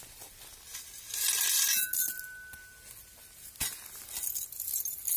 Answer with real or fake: real